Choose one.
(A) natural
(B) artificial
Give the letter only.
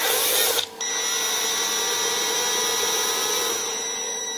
A